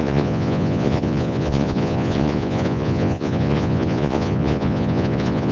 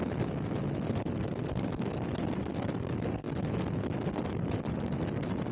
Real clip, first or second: second